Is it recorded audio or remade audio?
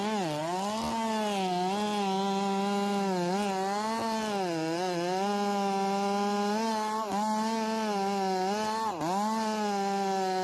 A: recorded